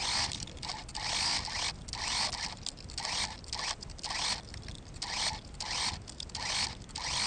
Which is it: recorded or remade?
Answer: recorded